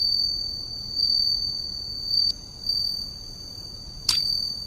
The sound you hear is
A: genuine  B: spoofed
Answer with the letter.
B